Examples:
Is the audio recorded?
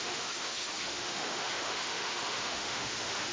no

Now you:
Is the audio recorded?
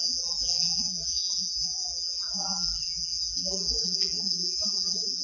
no